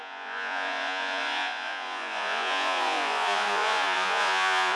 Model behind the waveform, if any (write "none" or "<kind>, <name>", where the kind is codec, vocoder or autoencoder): vocoder, Vocos